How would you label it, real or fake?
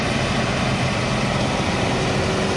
real